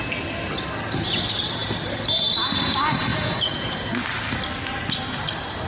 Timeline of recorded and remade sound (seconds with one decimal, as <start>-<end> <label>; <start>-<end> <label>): 0.0-3.1 recorded; 3.1-3.9 remade; 3.9-5.7 recorded